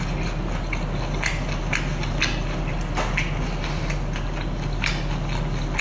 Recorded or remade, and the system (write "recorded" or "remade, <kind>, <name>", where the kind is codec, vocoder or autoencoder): recorded